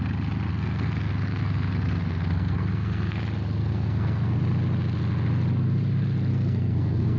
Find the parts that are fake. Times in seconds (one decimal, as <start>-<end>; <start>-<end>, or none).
0.5-3.2; 3.6-4.4; 6.3-7.2